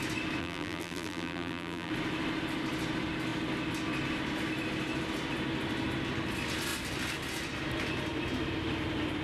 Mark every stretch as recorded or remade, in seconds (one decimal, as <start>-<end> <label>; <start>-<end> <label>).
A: 0.0-0.4 recorded; 0.4-1.9 remade; 1.9-9.2 recorded